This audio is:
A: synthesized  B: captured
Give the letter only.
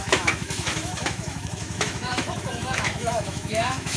A